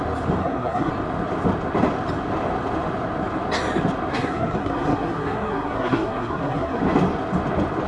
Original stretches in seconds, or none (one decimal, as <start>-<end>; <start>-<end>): 0.0-0.4; 0.9-4.1; 6.8-7.9

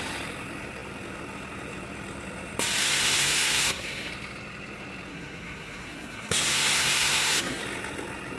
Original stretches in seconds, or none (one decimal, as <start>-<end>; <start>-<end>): 0.0-2.8; 4.1-5.1; 7.6-8.4

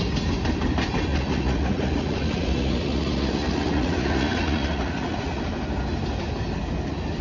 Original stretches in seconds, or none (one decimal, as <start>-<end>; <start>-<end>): 0.0-1.1; 5.4-7.2

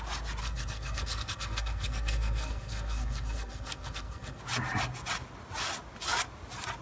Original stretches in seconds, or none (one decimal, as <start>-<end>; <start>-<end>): 0.0-0.4; 4.4-6.8